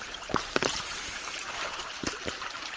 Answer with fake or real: fake